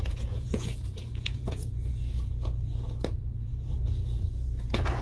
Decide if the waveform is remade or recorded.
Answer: remade